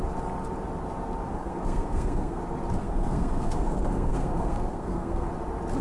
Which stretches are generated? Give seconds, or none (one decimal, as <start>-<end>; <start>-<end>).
1.3-2.4; 2.8-5.3